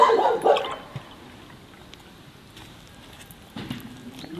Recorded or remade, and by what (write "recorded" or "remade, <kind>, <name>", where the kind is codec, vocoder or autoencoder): recorded